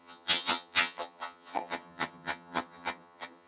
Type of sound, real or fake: fake